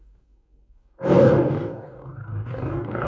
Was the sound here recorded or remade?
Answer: remade